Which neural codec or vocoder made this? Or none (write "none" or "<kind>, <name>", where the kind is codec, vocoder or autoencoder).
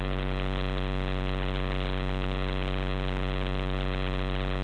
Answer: none